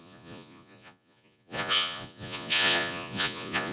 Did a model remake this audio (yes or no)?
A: yes